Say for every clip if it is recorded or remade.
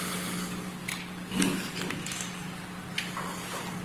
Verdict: recorded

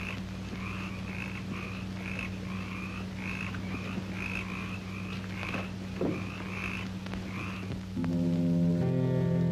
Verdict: recorded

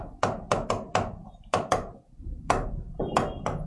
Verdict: remade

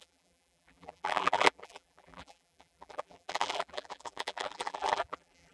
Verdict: remade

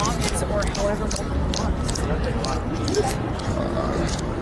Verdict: recorded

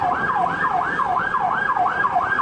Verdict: remade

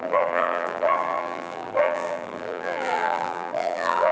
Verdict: remade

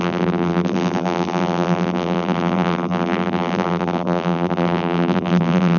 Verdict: remade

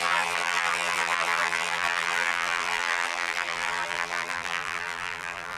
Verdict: remade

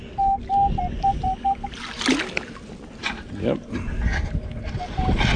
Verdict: recorded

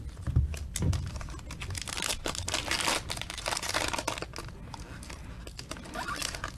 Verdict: recorded